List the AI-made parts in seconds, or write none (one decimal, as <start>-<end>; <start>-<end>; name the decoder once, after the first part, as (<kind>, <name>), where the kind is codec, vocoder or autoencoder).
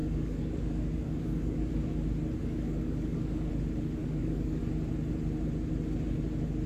0.0-1.7 (codec, DAC); 2.4-3.5; 4.0-4.6